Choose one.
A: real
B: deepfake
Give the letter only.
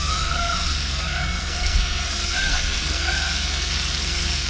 B